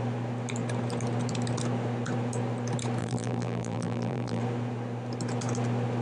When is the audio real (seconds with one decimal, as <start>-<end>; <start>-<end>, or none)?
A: 0.0-3.0; 4.4-6.0